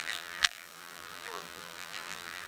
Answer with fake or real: fake